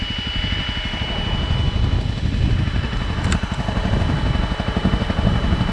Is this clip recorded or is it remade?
recorded